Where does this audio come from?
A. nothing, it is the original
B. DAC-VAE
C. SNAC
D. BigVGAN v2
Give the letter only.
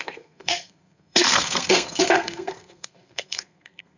C